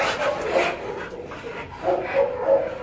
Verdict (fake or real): real